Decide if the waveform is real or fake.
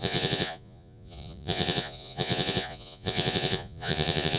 fake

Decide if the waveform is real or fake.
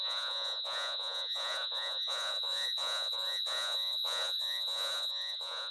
fake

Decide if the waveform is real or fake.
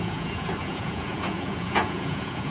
fake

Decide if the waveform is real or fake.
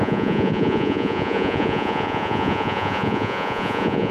fake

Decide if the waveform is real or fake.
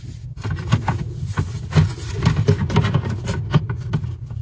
real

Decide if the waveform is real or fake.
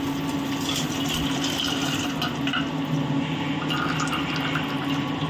real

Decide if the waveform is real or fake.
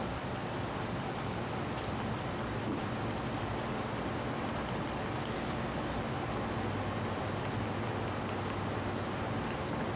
real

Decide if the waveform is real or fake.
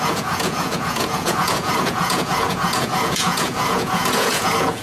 fake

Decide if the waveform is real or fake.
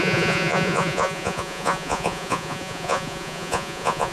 fake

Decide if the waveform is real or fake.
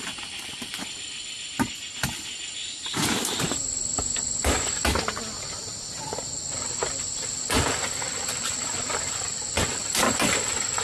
real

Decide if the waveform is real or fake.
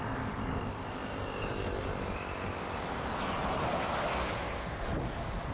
real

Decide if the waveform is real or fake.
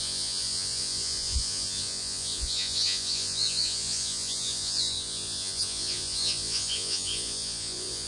fake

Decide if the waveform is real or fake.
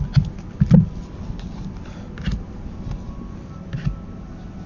real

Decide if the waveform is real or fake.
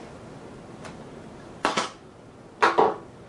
real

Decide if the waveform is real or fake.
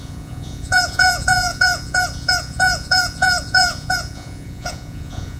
fake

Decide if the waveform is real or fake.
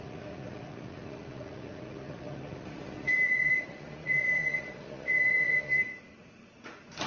fake